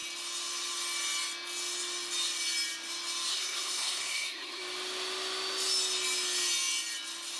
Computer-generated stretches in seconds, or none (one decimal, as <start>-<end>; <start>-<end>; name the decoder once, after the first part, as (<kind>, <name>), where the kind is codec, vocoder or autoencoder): 3.3-4.6 (codec, SNAC)